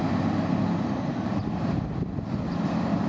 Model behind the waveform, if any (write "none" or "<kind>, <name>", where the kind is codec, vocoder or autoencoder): none